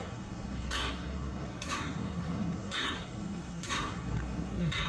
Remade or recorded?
remade